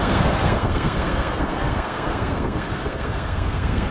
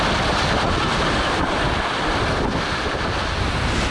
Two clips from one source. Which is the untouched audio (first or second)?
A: second